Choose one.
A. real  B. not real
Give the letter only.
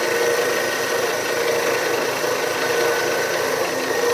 A